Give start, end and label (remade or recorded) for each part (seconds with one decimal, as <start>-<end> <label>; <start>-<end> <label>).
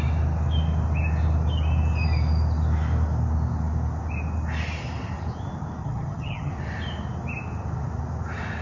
0.0-5.8 recorded; 5.8-6.5 remade; 6.5-8.6 recorded